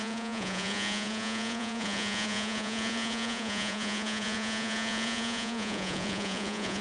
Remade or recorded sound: remade